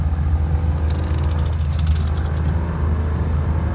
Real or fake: real